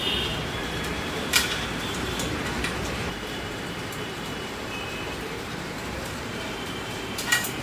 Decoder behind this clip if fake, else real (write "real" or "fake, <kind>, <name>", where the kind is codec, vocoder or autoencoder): fake, vocoder, BigVGAN v2